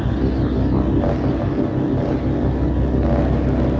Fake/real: real